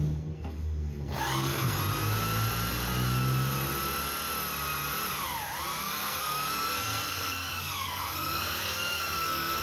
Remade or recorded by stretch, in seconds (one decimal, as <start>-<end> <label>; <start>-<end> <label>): 0.0-1.8 remade; 1.8-5.8 recorded; 5.8-9.6 remade